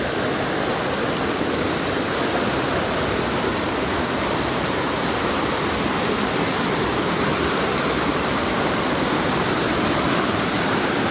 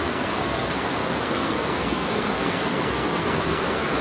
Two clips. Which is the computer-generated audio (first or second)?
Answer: second